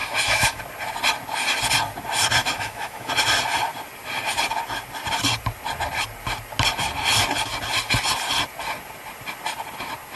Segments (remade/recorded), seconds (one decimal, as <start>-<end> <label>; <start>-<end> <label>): 0.0-0.6 remade; 0.6-2.4 recorded; 2.4-3.1 remade; 3.1-10.2 recorded